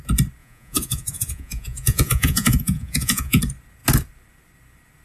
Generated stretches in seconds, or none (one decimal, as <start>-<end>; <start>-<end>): 0.4-3.4